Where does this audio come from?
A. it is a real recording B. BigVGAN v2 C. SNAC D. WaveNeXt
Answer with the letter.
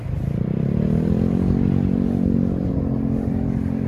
A